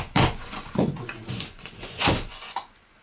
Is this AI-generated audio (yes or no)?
yes